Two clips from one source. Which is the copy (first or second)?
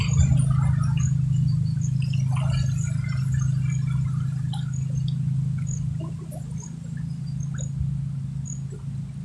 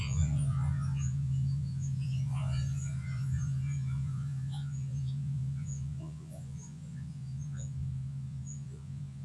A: second